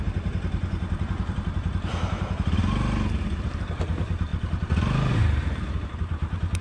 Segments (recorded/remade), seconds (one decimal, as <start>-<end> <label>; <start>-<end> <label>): 0.0-2.6 remade; 2.6-3.1 recorded; 3.1-6.6 remade